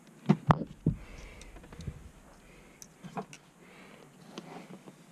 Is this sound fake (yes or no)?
no